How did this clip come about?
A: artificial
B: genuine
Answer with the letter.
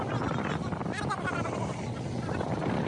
B